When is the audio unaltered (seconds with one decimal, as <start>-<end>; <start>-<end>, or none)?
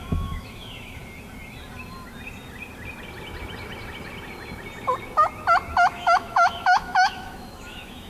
1.0-5.9